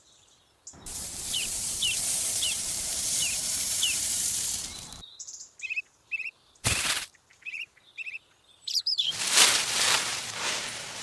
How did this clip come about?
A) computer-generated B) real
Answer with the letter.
A